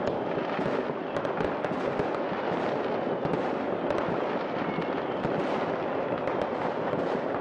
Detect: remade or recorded recorded